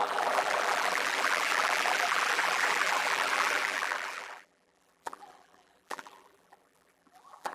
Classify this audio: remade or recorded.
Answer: remade